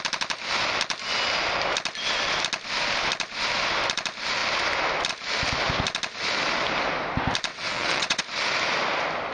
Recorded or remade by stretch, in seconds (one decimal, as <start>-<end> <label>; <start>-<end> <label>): 0.0-7.5 recorded; 7.5-8.2 remade; 8.2-9.3 recorded